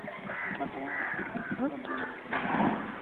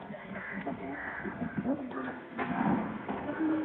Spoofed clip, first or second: second